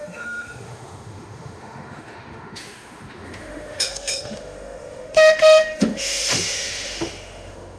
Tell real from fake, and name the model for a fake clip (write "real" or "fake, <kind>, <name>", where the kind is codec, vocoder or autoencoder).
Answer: fake, autoencoder, DAC-VAE